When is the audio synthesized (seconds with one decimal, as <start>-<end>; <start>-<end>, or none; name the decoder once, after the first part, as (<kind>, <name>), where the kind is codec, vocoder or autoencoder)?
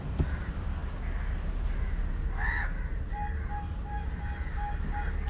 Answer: none